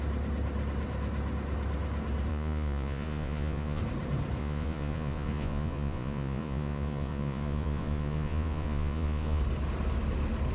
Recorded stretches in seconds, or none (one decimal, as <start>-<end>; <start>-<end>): 0.0-2.3; 3.8-4.4; 9.4-10.5